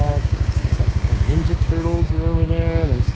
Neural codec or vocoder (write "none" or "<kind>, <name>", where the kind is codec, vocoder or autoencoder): codec, DAC